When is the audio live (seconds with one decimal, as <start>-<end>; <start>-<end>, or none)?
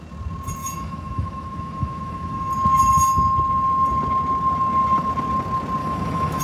0.0-0.6; 2.5-5.8